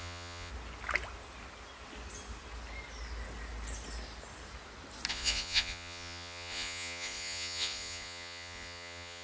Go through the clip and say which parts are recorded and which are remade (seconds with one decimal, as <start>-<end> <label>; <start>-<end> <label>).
0.0-0.5 remade; 0.5-5.1 recorded; 5.1-9.2 remade